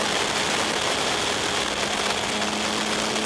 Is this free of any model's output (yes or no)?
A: yes